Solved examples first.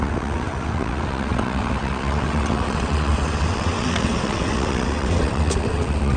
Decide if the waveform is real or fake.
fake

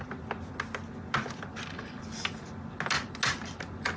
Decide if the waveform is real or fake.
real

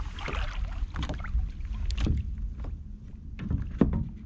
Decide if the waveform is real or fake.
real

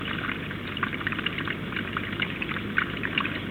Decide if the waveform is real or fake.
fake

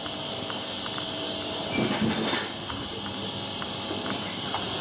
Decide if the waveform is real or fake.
real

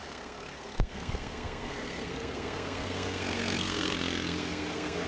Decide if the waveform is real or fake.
fake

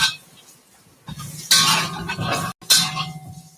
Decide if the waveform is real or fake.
real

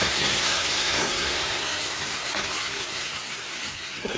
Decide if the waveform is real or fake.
fake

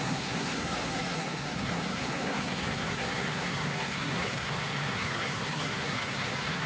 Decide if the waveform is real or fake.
fake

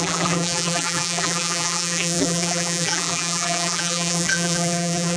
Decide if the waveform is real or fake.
fake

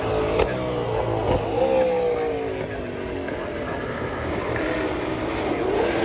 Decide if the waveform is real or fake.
real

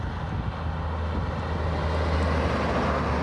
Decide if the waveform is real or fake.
real